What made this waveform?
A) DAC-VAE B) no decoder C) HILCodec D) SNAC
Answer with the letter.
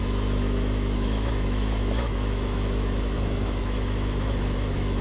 A